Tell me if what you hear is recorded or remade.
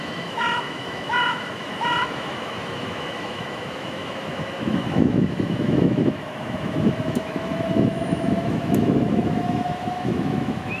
remade